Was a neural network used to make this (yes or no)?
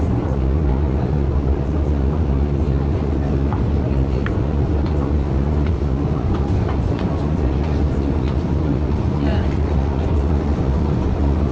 yes